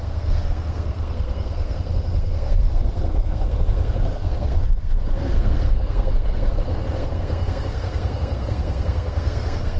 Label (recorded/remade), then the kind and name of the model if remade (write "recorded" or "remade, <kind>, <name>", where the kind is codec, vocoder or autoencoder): remade, codec, SNAC